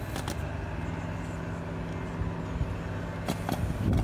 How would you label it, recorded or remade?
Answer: recorded